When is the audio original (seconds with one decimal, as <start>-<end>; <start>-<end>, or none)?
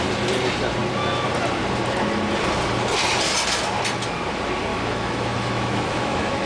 0.0-4.7